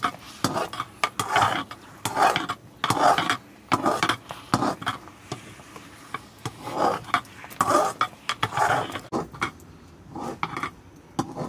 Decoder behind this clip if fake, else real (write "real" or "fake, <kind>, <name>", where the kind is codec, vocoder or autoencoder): real